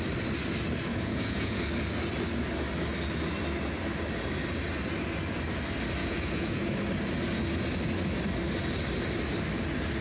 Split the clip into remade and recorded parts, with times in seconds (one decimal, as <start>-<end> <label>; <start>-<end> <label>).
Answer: 0.0-0.9 recorded; 0.9-1.6 remade; 1.6-6.0 recorded; 6.0-6.6 remade; 6.6-10.0 recorded